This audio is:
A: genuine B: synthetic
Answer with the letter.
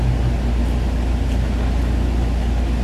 A